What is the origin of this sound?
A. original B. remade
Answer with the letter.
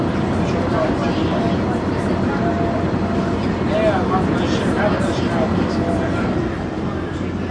A